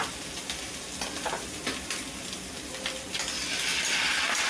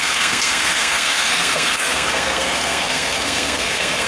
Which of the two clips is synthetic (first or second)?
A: second